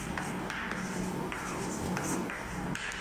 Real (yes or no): no